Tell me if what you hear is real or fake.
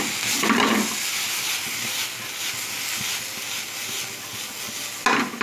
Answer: real